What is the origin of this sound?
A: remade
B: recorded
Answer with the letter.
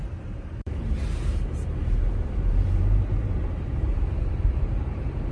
A